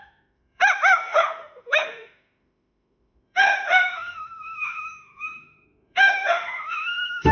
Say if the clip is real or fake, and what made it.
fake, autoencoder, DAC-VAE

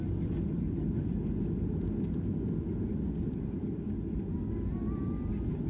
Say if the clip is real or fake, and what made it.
real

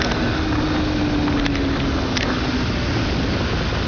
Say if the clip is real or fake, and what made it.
real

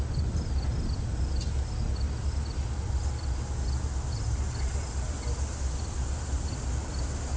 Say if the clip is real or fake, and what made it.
real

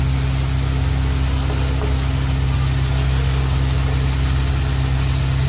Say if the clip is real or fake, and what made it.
real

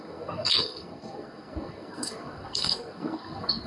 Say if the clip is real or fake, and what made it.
fake, codec, SNAC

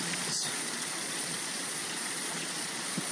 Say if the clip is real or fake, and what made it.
fake, vocoder, Vocos